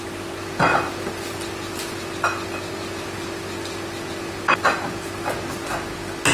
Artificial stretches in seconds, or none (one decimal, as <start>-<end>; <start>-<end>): none